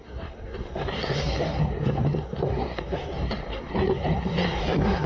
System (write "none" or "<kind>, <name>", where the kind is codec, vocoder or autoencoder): codec, SNAC